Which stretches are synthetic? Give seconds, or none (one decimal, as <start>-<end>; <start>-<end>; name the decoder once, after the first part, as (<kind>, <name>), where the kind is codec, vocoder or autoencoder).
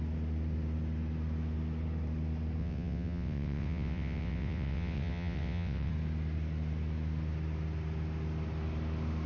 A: 2.6-5.9 (vocoder, WaveNeXt)